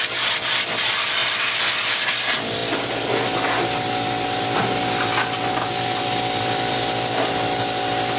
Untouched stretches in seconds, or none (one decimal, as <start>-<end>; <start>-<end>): 0.0-8.2